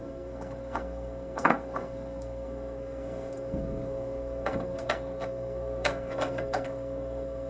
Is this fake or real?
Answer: fake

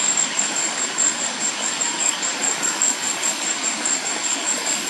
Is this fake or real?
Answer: fake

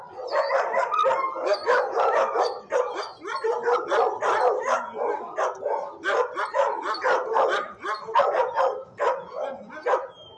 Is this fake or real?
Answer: real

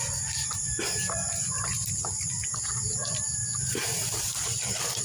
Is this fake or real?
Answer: real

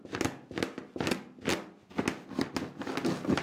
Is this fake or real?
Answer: real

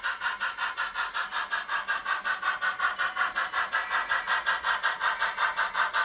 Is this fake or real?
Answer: real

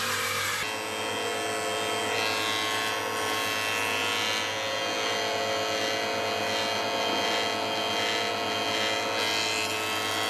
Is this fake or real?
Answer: real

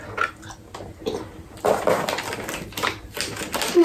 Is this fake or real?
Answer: real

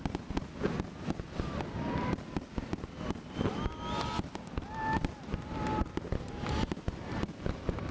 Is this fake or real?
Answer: real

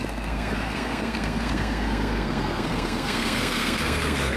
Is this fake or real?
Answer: fake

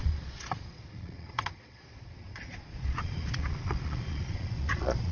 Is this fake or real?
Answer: fake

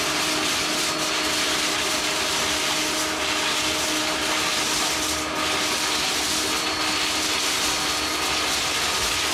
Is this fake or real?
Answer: real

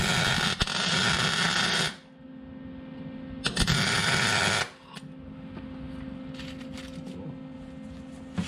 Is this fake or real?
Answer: real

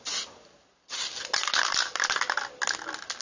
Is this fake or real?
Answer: real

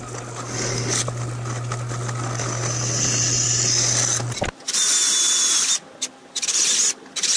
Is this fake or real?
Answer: real